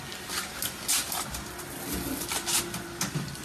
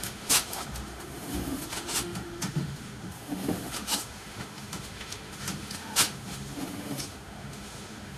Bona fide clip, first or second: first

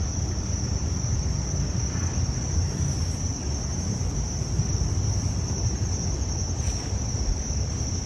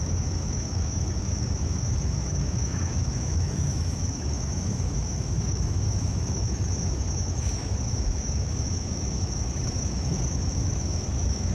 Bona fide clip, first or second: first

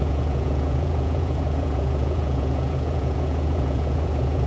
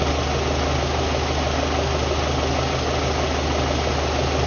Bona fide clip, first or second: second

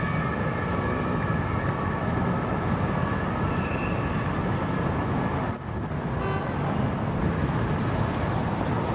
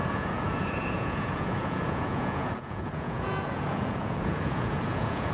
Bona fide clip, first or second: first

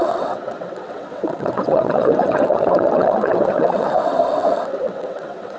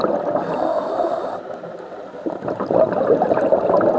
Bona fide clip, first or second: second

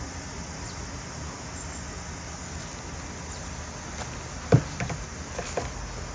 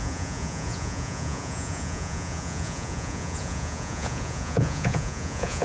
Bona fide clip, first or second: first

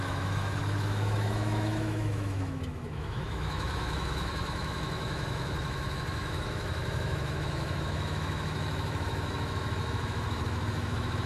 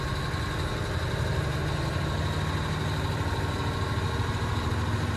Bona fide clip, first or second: second